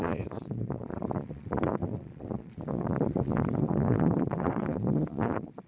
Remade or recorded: remade